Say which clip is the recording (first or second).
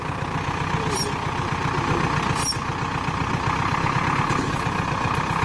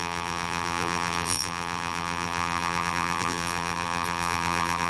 first